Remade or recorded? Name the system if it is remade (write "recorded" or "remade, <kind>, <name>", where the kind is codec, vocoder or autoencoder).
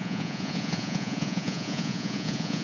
remade, vocoder, Vocos